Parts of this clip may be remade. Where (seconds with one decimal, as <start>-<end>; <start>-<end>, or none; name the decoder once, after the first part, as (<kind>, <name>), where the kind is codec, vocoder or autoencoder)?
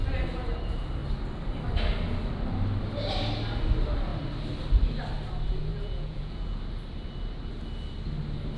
5.7-6.6 (vocoder, Vocos)